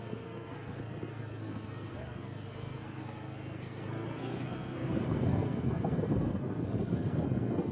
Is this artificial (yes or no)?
yes